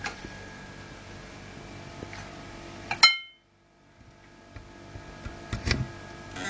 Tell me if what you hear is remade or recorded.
recorded